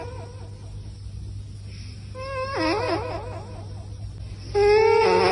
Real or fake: real